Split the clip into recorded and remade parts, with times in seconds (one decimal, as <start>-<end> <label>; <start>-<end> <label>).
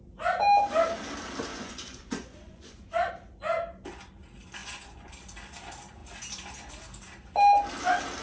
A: 0.0-1.5 recorded; 1.5-3.1 remade; 3.1-4.6 recorded; 4.6-5.1 remade; 5.1-8.2 recorded